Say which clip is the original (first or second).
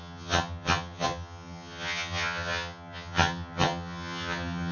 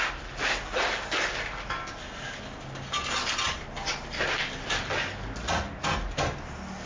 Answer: second